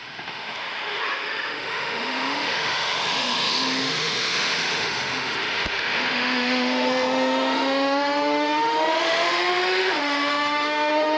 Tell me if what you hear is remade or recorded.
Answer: remade